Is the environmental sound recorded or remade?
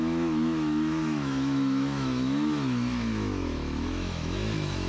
remade